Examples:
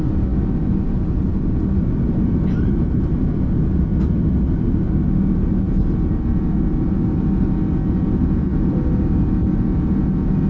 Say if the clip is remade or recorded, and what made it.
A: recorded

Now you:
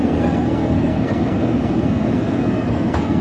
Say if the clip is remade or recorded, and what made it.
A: remade, codec, SNAC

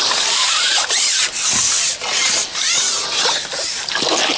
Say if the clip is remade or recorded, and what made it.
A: recorded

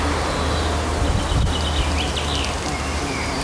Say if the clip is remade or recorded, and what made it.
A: recorded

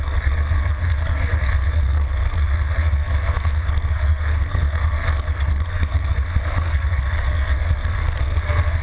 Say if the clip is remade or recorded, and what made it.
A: remade, codec, SNAC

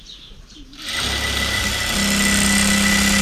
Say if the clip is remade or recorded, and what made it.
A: recorded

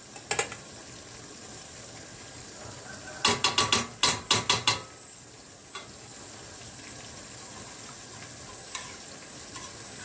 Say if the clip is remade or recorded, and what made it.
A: recorded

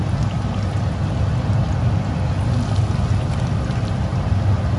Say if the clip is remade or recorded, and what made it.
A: recorded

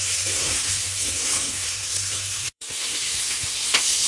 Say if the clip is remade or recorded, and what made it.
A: remade, codec, SNAC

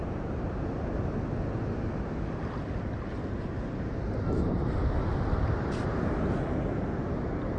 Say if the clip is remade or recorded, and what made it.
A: recorded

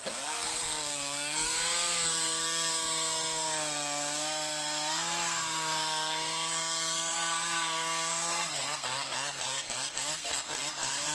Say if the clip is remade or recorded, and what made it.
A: remade, codec, SNAC